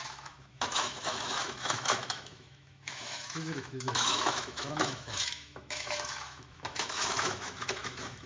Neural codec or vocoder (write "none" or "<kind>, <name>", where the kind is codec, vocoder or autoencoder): autoencoder, DAC-VAE